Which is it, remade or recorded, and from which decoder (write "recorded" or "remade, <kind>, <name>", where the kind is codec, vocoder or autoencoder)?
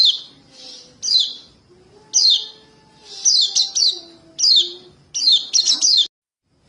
recorded